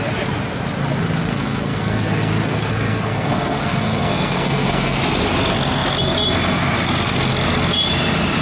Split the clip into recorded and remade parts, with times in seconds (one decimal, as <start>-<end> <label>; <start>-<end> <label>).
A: 0.0-1.2 recorded; 1.2-5.0 remade; 5.0-8.4 recorded